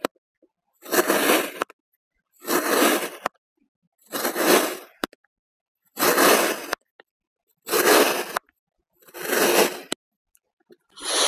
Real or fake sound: real